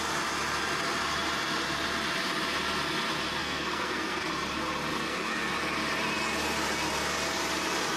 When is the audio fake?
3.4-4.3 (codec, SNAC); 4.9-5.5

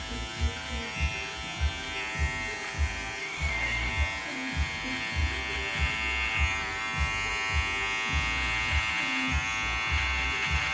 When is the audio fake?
3.2-3.9 (codec, DAC)

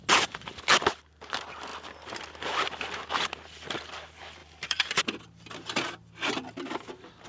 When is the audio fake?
4.4-5.2 (vocoder, BigVGAN v2)

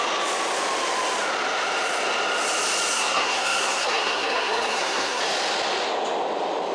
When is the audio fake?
2.9-5.2 (codec, SNAC)